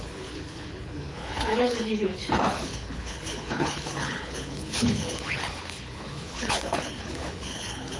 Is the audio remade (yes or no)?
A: yes